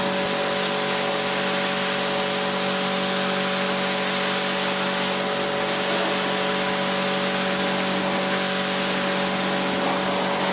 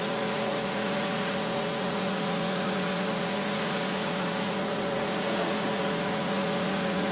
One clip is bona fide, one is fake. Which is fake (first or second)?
second